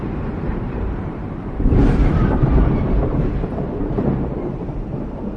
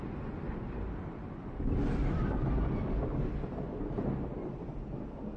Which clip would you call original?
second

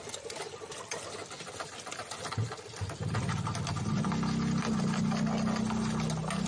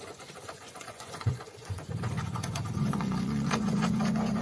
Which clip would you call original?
first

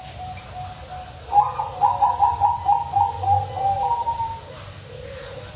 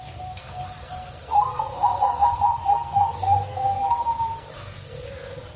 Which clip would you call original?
first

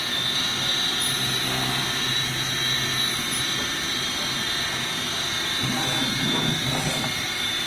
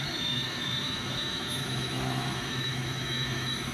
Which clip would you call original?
first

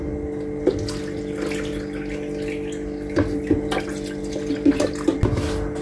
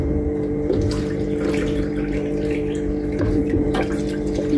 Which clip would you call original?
first